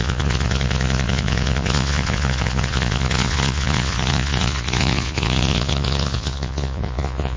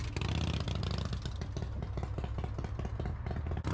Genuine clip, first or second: second